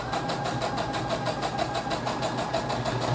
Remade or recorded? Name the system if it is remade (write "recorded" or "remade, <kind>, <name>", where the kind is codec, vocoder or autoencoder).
recorded